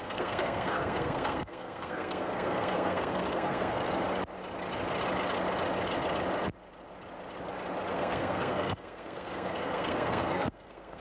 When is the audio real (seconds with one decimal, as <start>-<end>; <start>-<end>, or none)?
3.8-7.9